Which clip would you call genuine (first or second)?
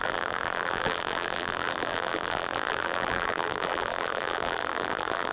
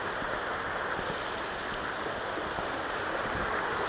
second